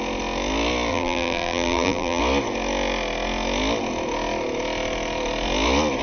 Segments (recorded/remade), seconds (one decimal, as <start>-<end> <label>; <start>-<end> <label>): 0.0-0.9 recorded; 0.9-2.2 remade; 2.2-6.0 recorded